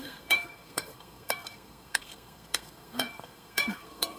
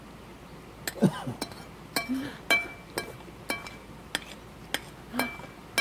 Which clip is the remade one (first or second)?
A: first